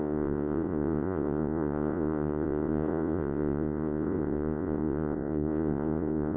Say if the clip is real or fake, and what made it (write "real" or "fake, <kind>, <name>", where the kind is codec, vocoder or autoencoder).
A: fake, vocoder, Vocos